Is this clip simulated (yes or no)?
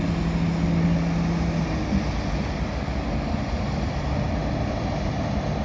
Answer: no